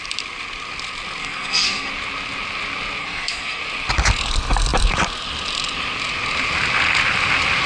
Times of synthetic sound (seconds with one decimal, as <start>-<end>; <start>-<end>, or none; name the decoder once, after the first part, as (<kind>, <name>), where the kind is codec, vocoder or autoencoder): 1.2-1.9 (codec, SNAC); 3.0-3.6